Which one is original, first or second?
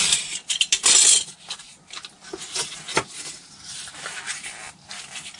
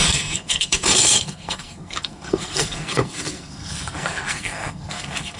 first